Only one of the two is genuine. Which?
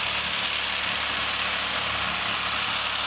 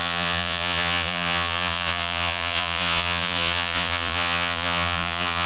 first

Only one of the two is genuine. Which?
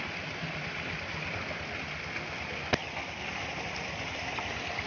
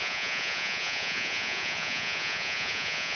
first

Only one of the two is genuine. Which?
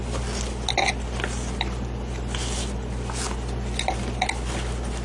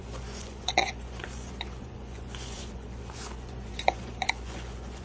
first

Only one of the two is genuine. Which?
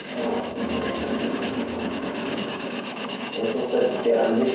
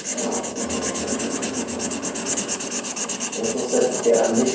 second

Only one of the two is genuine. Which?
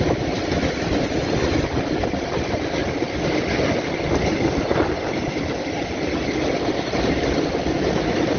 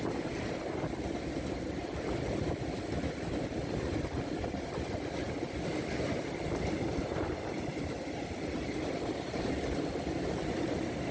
first